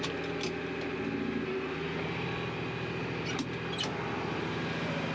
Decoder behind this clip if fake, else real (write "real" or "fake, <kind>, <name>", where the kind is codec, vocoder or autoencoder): real